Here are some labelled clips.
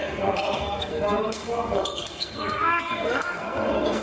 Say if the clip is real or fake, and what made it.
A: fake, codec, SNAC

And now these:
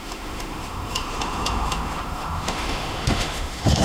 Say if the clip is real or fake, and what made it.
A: fake, autoencoder, DAC-VAE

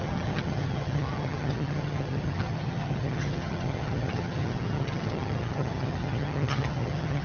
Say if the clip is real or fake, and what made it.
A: fake, vocoder, HiFi-GAN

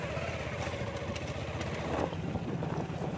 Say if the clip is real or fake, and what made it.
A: real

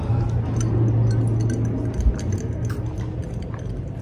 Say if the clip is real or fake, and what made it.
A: real